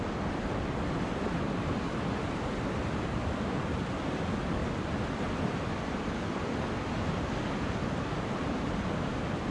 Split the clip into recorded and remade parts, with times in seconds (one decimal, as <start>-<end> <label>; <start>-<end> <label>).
0.0-9.5 recorded